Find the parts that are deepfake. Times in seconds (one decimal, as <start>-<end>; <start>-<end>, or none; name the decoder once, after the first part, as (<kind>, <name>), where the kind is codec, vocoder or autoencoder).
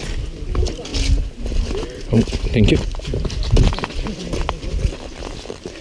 none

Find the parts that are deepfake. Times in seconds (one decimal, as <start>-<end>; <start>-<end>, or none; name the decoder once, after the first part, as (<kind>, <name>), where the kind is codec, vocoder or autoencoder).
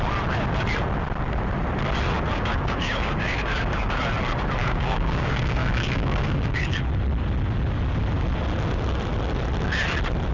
2.3-4.0 (codec, DAC); 4.6-6.8